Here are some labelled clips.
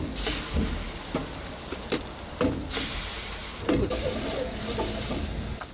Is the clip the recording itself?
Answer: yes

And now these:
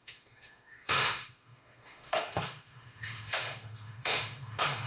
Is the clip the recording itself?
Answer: no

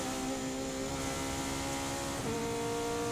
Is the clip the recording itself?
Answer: yes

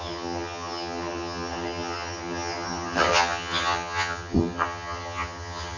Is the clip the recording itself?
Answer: no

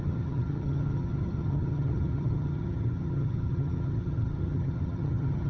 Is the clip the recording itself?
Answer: no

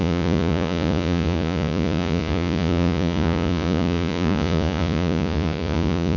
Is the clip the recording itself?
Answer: no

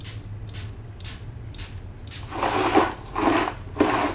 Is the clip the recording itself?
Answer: yes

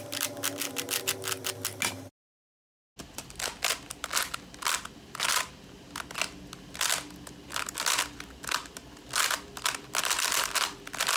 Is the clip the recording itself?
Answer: yes